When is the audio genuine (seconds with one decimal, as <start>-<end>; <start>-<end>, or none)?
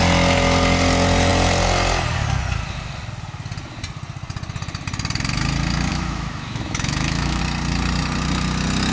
0.0-5.9; 7.4-8.9